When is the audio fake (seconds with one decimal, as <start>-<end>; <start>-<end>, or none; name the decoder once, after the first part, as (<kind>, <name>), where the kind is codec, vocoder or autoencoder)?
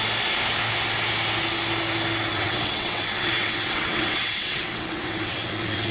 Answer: 2.3-5.9 (vocoder, WaveNeXt)